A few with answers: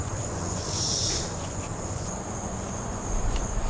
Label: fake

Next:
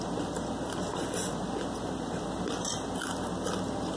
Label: real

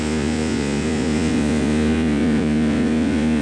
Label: fake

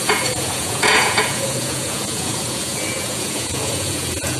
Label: fake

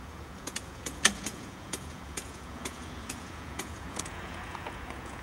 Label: fake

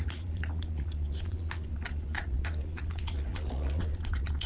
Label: fake